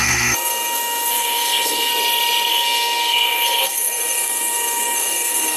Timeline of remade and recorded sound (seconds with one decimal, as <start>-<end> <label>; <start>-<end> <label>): 0.0-1.9 remade; 1.9-2.5 recorded; 2.5-5.6 remade